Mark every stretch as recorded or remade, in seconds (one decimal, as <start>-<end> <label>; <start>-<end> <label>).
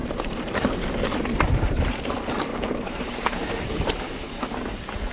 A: 0.0-1.9 remade; 1.9-2.5 recorded; 2.5-3.9 remade; 3.9-5.1 recorded